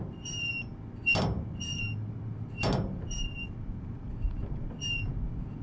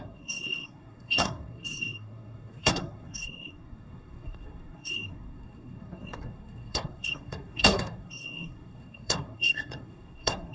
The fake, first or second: second